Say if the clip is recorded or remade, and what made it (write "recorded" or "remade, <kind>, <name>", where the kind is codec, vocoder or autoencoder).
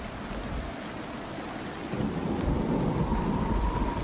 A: recorded